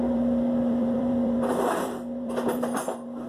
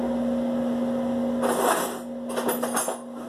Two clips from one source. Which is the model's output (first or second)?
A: first